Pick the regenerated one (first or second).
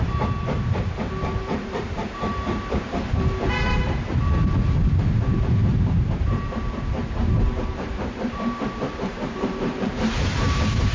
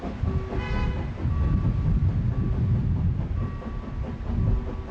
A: first